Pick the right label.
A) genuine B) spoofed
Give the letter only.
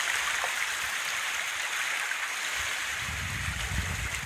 A